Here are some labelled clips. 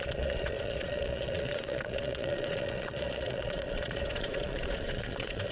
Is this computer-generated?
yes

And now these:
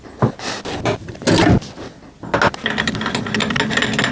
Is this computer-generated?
no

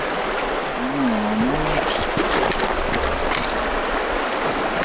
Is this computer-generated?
no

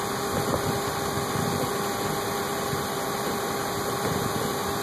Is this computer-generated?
no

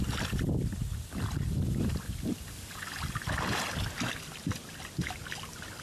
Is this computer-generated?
no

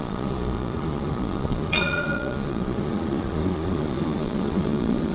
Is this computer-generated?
yes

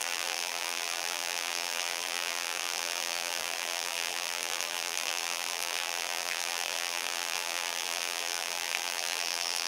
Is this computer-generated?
yes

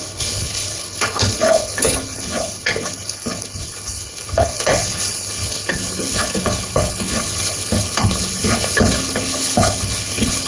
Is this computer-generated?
yes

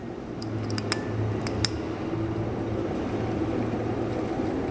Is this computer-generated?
no